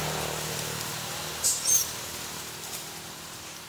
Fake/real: fake